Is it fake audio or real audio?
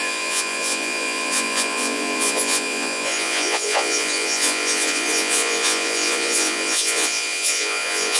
fake